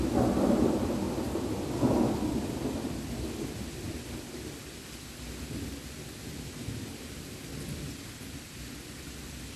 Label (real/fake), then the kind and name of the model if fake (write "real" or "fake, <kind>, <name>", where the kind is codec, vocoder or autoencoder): real